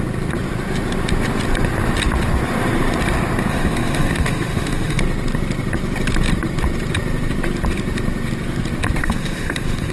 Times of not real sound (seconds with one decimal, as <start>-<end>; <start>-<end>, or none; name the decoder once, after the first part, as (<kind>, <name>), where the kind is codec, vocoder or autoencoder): 3.5-5.0 (autoencoder, DAC-VAE); 9.0-9.9